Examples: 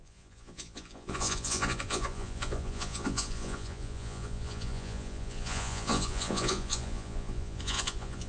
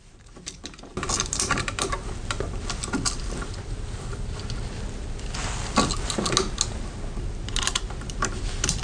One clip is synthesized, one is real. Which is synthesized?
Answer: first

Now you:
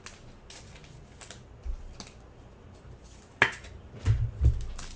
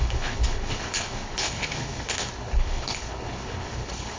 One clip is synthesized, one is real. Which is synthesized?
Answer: second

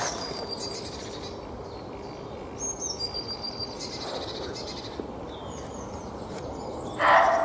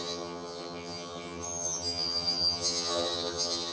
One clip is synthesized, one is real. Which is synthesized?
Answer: second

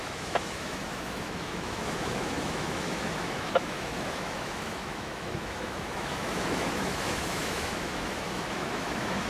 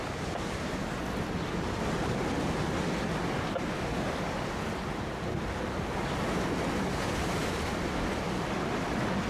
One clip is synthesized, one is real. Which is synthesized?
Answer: first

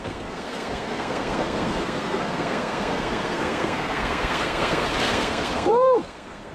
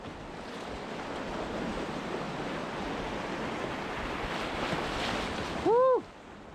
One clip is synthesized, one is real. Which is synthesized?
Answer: first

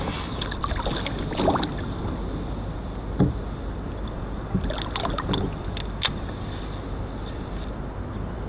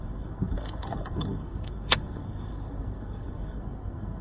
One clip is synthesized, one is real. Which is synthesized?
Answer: second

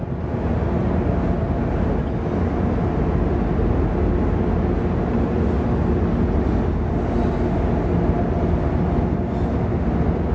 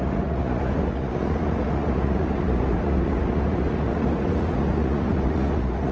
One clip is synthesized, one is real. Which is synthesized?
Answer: second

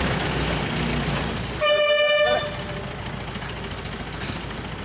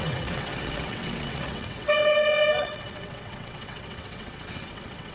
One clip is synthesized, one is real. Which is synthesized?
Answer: second